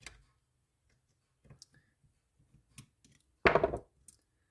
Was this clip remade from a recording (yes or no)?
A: no